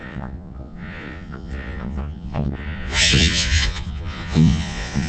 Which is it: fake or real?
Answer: fake